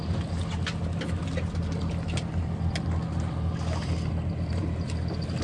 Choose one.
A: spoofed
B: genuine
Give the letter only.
B